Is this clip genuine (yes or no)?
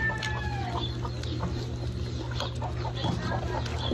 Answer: yes